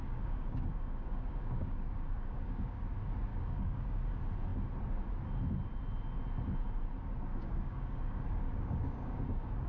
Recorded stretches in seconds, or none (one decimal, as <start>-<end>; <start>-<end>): 2.8-3.3; 4.0-7.3